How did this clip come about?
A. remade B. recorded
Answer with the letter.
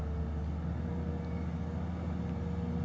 B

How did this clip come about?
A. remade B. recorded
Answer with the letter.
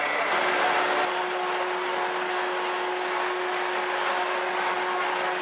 B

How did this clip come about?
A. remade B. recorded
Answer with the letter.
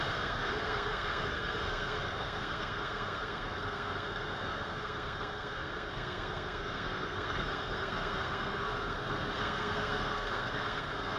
A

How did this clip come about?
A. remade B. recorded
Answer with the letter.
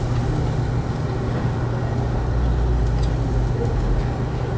B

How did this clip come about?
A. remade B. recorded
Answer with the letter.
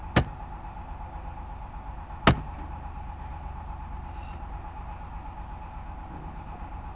B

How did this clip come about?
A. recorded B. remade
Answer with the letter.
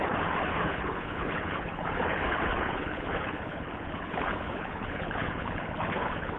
B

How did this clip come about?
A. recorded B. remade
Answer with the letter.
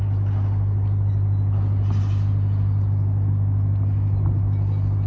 A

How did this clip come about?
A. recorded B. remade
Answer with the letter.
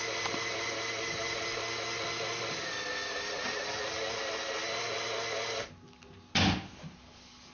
A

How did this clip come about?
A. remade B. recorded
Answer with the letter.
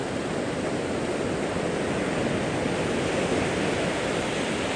B